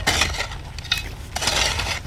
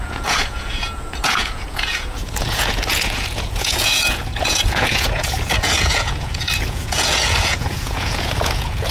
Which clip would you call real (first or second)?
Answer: first